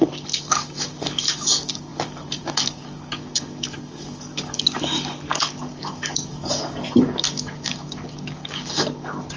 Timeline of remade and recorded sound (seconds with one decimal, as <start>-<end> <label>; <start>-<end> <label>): 0.0-9.4 remade